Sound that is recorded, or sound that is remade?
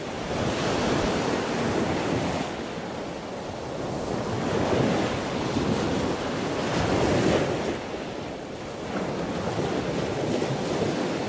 recorded